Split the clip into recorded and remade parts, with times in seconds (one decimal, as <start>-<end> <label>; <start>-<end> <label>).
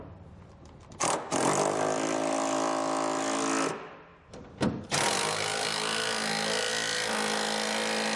0.0-8.2 recorded